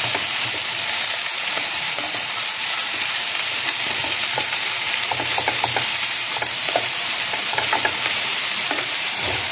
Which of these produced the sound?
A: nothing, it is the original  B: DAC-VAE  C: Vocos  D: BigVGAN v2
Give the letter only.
D